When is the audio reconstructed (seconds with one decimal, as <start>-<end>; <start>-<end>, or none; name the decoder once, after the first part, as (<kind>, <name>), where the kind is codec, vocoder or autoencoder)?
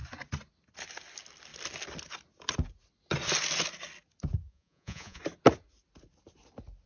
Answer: 4.5-5.2 (vocoder, Vocos)